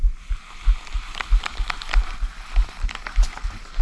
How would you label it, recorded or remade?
recorded